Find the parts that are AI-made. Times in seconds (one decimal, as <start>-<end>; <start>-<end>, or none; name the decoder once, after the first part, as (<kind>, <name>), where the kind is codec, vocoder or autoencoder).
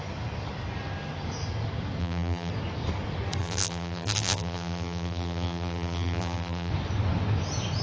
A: 2.0-2.5 (vocoder, BigVGAN v2); 3.4-6.7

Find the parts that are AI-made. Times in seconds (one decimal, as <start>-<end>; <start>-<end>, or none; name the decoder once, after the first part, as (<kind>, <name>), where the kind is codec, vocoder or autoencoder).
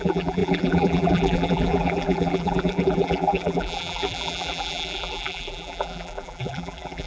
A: 0.0-7.1 (vocoder, BigVGAN v2)